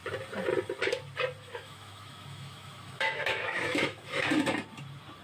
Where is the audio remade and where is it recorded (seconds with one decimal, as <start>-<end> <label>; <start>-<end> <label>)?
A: 0.0-1.4 recorded; 1.4-4.2 remade; 4.2-5.2 recorded